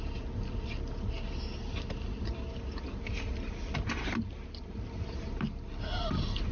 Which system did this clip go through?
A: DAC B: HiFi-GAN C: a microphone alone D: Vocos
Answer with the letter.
C